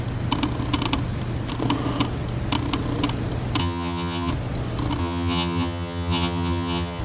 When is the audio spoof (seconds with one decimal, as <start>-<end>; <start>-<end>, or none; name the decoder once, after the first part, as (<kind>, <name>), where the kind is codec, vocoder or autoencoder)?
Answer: 3.6-4.3 (vocoder, HiFi-GAN); 5.0-7.0